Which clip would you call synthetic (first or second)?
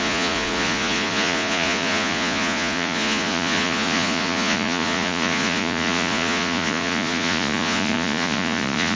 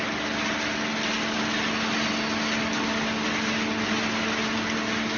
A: first